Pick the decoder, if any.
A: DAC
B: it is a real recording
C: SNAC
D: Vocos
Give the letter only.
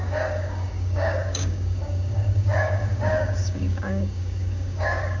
A